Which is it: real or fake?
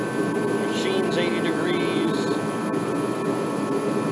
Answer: real